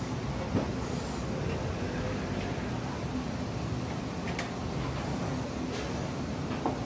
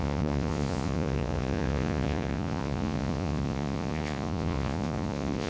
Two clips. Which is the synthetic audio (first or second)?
second